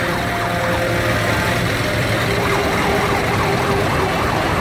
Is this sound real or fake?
fake